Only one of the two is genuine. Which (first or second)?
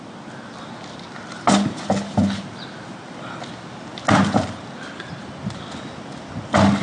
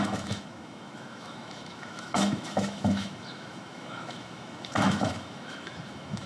first